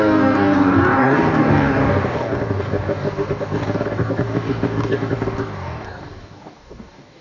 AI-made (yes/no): yes